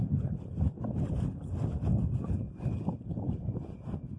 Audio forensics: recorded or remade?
recorded